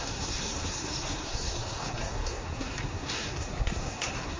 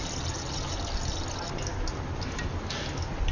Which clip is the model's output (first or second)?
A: first